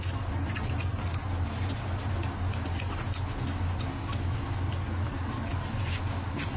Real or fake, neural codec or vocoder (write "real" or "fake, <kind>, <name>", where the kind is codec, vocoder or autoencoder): real